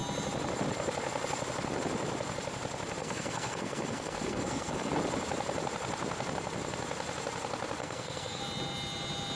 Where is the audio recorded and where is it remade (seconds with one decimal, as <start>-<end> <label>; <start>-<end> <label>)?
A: 0.0-3.0 recorded; 3.0-4.9 remade; 4.9-7.8 recorded; 7.8-8.4 remade; 8.4-9.4 recorded